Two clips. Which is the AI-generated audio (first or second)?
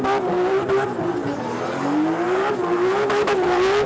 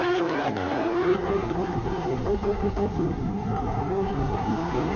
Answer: second